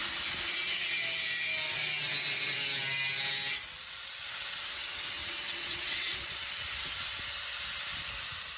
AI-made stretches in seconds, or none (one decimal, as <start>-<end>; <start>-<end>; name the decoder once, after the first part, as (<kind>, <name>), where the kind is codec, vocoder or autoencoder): 4.0-4.6 (vocoder, WaveNeXt); 5.2-7.2